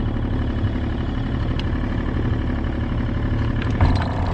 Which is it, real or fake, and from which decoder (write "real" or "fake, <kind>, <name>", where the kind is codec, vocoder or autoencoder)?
real